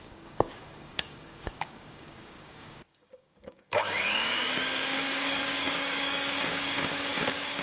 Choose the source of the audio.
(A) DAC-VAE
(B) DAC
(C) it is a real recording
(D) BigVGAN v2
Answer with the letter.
B